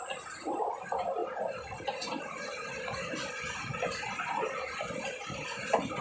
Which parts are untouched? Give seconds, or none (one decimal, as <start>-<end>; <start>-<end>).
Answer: 0.0-6.0